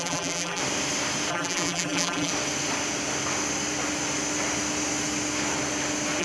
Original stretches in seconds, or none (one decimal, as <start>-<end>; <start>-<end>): 0.6-1.3; 2.3-6.2